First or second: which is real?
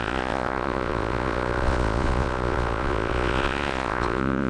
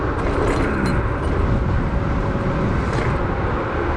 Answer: second